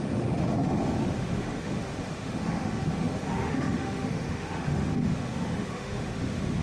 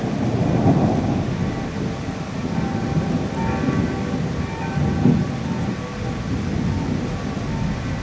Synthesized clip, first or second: first